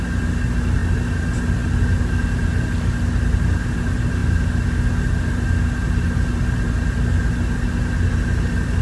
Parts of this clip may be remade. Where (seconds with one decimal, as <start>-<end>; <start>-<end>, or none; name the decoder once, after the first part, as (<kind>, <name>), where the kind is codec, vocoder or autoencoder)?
none